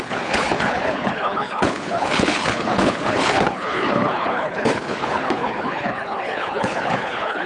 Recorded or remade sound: remade